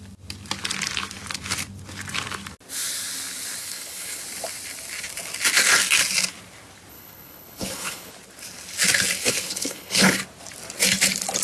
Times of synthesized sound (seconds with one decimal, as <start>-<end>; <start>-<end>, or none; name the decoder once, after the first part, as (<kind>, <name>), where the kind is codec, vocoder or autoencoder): 3.6-4.2 (codec, HILCodec); 6.9-8.1; 9.2-10.2